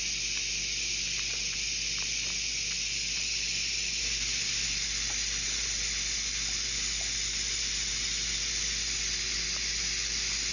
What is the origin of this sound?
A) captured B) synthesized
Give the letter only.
A